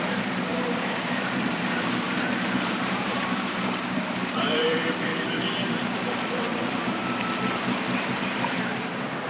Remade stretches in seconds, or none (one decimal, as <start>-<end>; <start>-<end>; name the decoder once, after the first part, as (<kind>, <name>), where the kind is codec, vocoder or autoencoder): 0.0-5.1 (vocoder, BigVGAN v2); 5.7-7.0; 8.2-9.3